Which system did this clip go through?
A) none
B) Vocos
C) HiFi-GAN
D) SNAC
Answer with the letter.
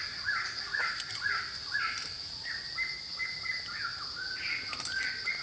A